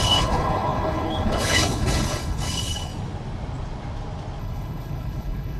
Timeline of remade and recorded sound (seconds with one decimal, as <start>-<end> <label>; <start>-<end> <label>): 0.0-2.9 remade; 2.9-4.4 recorded; 4.4-5.6 remade